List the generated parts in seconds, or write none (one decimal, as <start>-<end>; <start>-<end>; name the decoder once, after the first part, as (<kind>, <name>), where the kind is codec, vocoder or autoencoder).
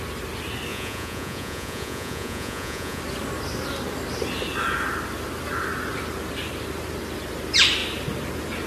0.7-3.0 (vocoder, Vocos)